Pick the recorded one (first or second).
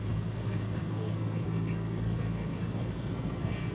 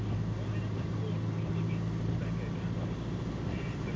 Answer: second